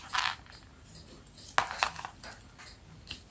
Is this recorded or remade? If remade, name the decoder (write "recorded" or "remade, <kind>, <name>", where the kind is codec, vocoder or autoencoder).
recorded